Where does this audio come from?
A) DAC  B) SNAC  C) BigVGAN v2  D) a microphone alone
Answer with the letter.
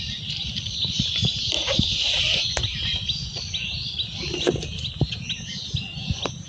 D